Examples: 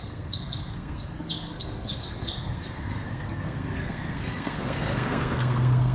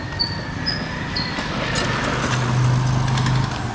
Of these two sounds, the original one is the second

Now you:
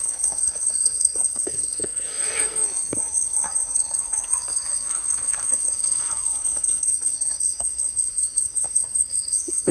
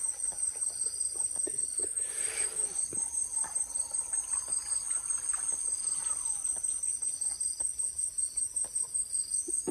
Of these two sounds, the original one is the second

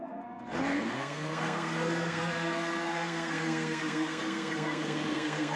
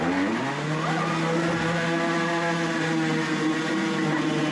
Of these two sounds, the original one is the second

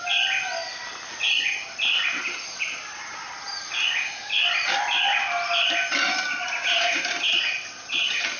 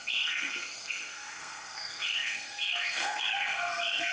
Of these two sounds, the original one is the first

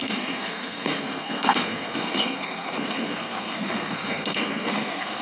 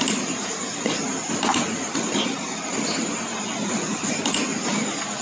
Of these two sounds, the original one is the second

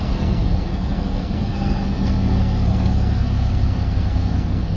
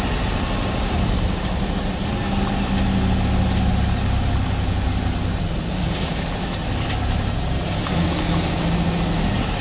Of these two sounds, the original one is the second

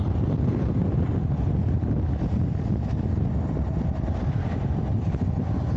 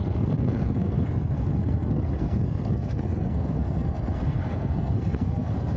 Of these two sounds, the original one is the first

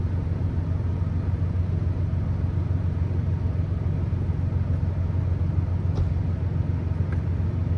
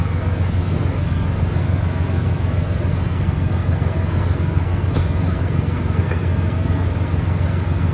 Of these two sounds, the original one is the first